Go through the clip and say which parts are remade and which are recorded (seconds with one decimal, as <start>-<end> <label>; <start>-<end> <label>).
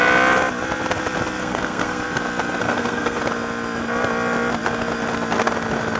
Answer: 0.0-1.4 recorded; 1.4-2.0 remade; 2.0-2.6 recorded; 2.6-3.2 remade; 3.2-6.0 recorded